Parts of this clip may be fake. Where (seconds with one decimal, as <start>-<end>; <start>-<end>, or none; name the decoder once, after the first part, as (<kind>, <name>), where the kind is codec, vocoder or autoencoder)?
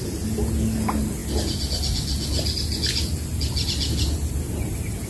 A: none